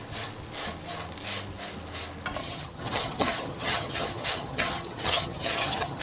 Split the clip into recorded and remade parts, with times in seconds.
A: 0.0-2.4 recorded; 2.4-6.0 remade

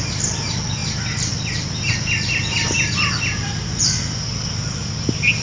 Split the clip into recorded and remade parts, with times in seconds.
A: 0.0-5.4 recorded

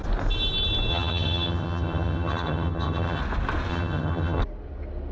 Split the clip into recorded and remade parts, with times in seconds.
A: 0.0-0.9 recorded; 0.9-3.2 remade; 3.2-3.7 recorded; 3.7-4.4 remade; 4.4-5.1 recorded

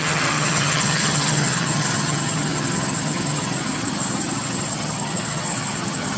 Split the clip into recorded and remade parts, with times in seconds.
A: 0.0-6.2 remade

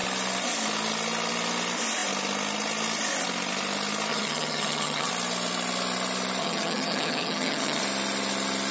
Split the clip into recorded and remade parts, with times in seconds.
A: 0.0-4.1 recorded; 4.1-5.1 remade; 5.1-6.4 recorded; 6.4-7.8 remade; 7.8-8.7 recorded

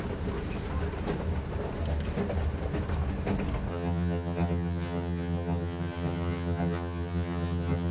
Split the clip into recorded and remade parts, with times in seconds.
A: 0.0-3.7 recorded; 3.7-7.9 remade